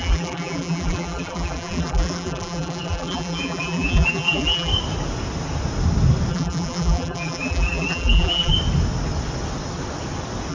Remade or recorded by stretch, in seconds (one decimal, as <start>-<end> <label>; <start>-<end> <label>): 0.0-4.7 remade; 4.7-6.3 recorded; 6.3-8.5 remade; 8.5-10.5 recorded